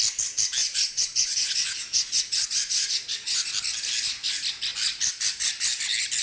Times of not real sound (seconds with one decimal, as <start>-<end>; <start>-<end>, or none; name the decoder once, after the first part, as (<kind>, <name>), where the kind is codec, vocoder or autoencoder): 0.6-3.5 (vocoder, Vocos)